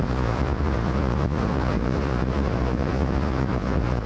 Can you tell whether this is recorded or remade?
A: remade